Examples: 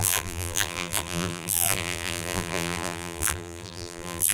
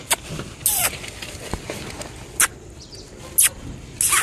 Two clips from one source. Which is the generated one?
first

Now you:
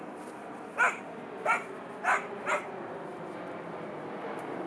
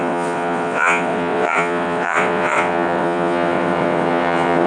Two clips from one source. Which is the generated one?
second